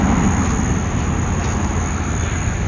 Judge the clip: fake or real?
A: real